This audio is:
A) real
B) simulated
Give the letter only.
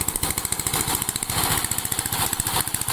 A